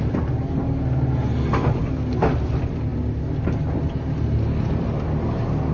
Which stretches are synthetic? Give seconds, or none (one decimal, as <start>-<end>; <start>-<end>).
none